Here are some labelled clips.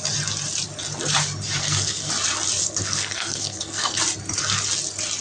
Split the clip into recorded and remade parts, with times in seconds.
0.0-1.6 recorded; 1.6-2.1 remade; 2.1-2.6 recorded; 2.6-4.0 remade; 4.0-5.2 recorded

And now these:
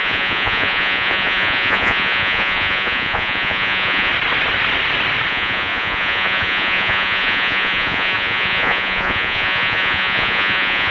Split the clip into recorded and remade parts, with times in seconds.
0.0-4.1 remade; 4.1-5.3 recorded; 5.3-10.9 remade

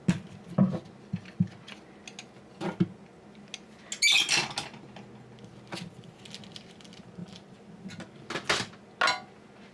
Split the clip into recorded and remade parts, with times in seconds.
0.0-9.7 recorded

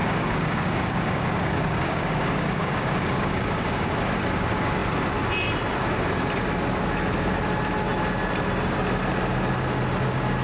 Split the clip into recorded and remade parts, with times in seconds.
0.0-3.9 remade; 3.9-10.4 recorded